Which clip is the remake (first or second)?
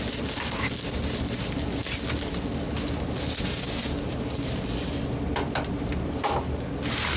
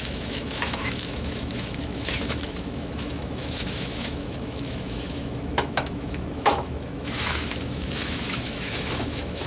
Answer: second